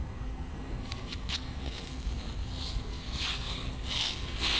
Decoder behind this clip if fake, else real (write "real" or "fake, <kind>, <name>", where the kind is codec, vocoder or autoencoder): fake, codec, SNAC